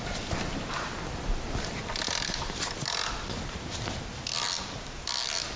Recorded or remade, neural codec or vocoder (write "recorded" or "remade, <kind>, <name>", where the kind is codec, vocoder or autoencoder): recorded